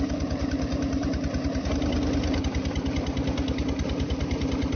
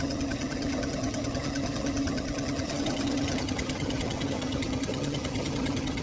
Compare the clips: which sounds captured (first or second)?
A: first